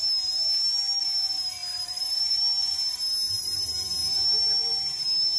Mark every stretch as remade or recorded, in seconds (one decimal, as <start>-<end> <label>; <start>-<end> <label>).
0.0-5.4 recorded